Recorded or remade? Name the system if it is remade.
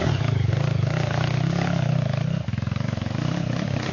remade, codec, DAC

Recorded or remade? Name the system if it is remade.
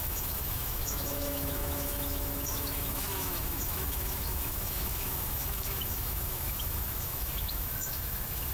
remade, autoencoder, DAC-VAE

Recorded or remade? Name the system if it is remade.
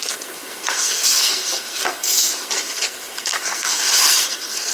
remade, codec, SNAC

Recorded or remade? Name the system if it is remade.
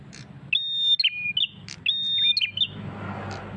recorded